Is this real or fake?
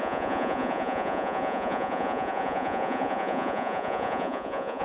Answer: fake